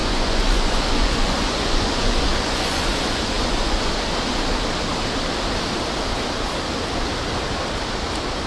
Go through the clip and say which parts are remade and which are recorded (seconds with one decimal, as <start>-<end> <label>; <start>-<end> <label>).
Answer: 0.0-3.9 remade; 3.9-8.5 recorded